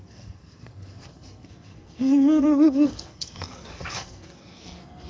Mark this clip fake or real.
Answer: fake